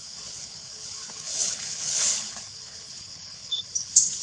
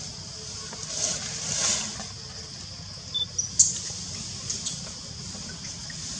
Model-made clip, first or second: first